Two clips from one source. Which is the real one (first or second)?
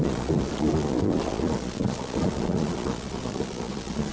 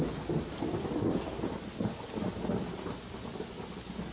second